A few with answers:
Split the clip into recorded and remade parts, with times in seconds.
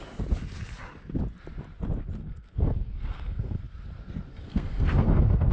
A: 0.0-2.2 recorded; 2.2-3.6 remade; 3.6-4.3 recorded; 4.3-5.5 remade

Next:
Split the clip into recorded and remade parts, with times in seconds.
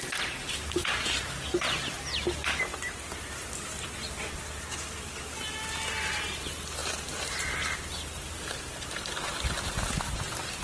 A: 0.0-10.6 recorded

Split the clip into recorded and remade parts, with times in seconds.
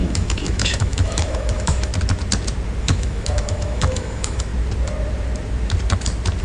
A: 0.0-1.9 remade; 1.9-2.8 recorded; 2.8-4.5 remade; 4.5-6.4 recorded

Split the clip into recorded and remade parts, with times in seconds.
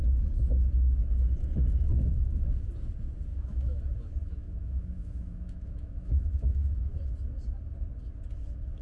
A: 0.0-1.9 recorded; 1.9-2.7 remade; 2.7-3.3 recorded; 3.3-3.8 remade; 3.8-4.2 recorded; 4.2-7.0 remade; 7.0-8.8 recorded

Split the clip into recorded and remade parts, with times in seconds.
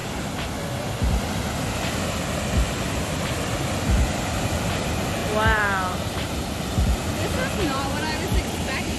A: 0.0-5.2 recorded; 5.2-6.5 remade; 6.5-9.0 recorded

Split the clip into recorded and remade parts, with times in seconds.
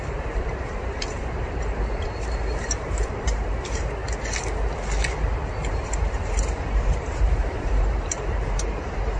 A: 0.0-4.0 remade; 4.0-5.7 recorded; 5.7-9.2 remade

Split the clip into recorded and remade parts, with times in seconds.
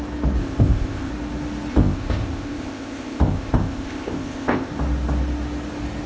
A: 0.0-0.4 recorded; 0.4-1.1 remade; 1.1-1.7 recorded; 1.7-4.7 remade; 4.7-6.1 recorded